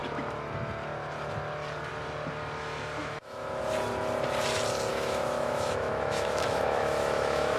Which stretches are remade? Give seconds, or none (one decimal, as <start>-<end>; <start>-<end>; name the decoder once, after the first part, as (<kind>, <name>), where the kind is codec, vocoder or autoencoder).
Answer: 3.0-3.6 (autoencoder, DAC-VAE); 4.9-7.6